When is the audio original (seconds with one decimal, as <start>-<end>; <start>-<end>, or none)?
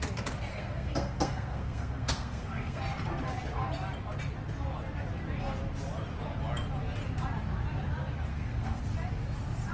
0.0-0.5; 2.8-8.3; 8.8-9.7